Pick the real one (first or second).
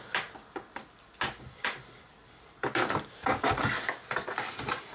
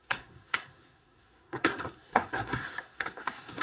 first